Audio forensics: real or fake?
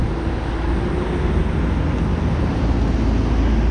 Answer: real